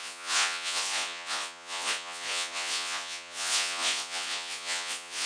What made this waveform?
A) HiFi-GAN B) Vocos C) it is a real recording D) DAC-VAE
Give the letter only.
B